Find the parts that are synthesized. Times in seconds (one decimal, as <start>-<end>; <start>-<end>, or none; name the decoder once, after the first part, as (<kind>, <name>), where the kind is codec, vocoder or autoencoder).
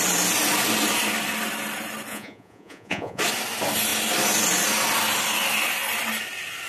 2.1-3.2 (vocoder, Vocos)